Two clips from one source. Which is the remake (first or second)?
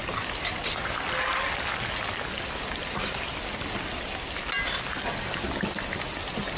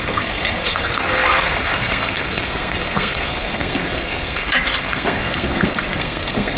second